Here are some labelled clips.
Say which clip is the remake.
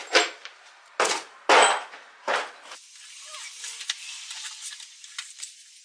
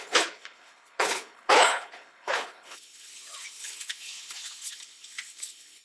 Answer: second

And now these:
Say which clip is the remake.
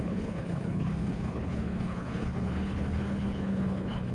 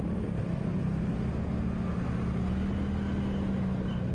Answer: first